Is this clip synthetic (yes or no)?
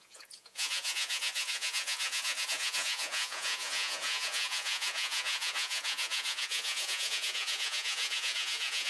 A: yes